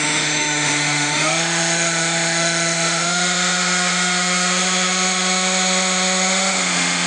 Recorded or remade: remade